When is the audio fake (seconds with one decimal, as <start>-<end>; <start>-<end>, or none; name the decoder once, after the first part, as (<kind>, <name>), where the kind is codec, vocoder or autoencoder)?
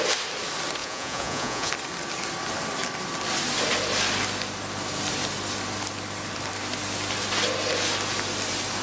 0.8-1.7 (vocoder, Vocos)